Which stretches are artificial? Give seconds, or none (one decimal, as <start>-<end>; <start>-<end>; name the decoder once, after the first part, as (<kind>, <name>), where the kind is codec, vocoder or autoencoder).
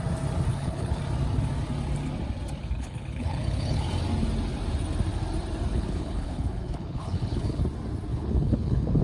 0.5-1.0 (codec, HILCodec); 2.6-3.9; 5.7-7.6; 8.1-9.0